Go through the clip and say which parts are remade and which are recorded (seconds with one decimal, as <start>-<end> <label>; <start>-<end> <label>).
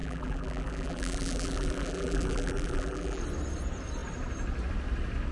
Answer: 0.0-3.2 remade; 3.2-5.3 recorded